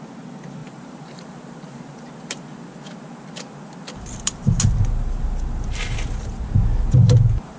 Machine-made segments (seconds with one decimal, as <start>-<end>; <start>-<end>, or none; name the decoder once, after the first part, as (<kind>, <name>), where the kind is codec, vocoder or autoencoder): 0.6-2.4 (vocoder, BigVGAN v2)